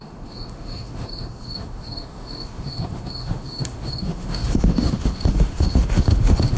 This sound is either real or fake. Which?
fake